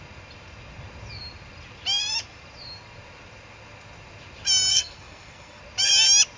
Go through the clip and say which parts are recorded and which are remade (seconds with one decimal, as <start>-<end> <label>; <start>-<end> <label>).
0.0-4.7 recorded; 4.7-5.6 remade; 5.6-6.4 recorded